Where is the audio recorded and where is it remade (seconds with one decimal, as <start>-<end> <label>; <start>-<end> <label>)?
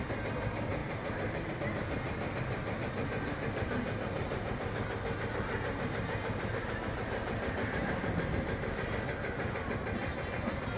0.0-10.8 recorded